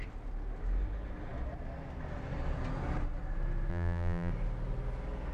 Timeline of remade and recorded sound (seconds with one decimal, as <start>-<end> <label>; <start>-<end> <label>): 0.0-3.7 recorded; 3.7-4.3 remade; 4.3-5.3 recorded